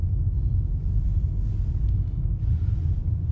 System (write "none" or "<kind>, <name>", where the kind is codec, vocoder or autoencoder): none